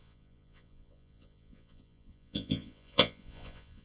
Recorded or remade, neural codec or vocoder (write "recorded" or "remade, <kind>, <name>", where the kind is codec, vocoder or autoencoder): remade, vocoder, Vocos